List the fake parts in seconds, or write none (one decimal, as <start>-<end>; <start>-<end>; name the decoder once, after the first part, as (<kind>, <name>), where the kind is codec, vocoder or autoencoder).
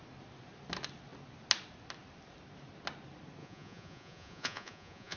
3.4-5.2 (vocoder, Vocos)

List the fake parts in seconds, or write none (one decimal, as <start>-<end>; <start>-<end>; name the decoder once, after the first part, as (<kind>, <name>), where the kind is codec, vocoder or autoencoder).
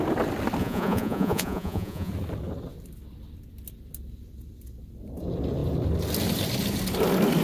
0.6-2.1 (vocoder, Vocos)